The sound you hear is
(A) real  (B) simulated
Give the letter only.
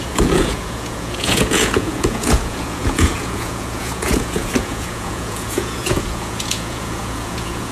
B